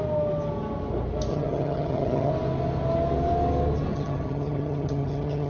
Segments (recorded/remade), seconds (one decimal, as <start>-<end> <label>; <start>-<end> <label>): 0.0-1.3 recorded; 1.3-2.3 remade; 2.3-3.9 recorded; 3.9-5.5 remade